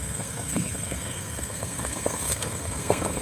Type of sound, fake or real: fake